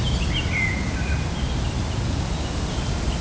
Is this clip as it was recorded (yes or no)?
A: yes